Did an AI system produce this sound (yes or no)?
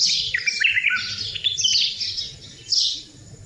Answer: no